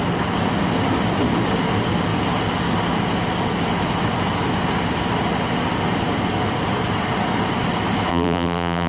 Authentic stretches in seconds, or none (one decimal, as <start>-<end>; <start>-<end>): 0.0-8.1